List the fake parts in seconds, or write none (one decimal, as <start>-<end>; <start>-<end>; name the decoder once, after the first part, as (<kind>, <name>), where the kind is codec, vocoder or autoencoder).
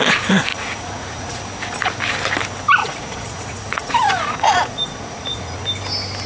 0.5-1.4 (vocoder, Vocos); 2.8-5.6